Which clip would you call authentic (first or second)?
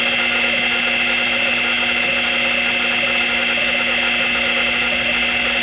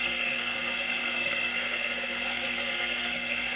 first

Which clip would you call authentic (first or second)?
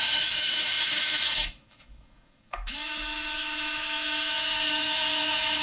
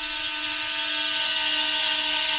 second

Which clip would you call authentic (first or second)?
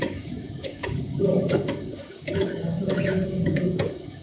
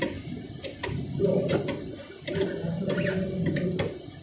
second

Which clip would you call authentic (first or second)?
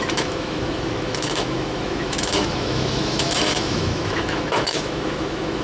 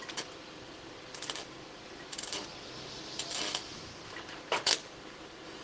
second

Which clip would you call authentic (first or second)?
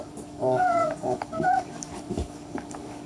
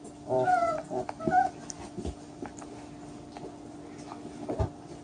second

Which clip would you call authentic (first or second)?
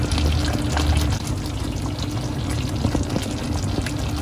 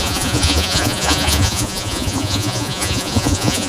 first